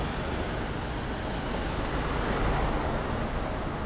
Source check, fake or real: real